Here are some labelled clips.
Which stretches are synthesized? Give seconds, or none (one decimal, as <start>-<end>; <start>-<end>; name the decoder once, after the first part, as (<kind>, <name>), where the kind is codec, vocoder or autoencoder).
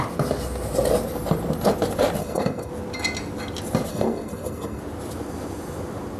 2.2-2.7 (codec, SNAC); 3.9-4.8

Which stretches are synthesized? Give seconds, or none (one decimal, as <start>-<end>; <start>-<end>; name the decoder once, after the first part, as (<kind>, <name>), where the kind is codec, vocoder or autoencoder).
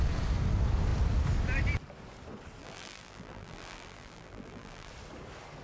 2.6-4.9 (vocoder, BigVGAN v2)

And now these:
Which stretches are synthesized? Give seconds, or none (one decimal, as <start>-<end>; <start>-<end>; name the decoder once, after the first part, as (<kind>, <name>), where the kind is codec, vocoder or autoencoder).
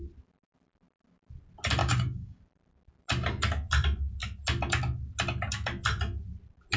1.8-2.4 (codec, DAC)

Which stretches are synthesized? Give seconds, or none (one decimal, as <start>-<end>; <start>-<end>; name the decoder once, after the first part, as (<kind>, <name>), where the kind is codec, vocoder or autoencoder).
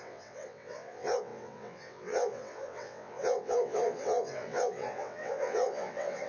0.0-6.3 (vocoder, WaveNeXt)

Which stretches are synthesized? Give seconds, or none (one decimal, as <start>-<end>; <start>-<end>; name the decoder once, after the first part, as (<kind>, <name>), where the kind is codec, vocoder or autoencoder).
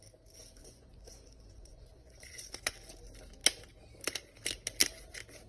0.6-2.7 (vocoder, Vocos)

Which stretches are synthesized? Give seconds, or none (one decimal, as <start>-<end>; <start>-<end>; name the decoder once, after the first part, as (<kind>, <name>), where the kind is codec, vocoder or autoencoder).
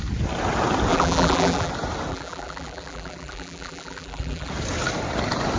0.9-1.7 (vocoder, BigVGAN v2); 2.1-4.5